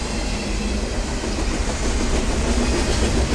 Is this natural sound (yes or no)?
yes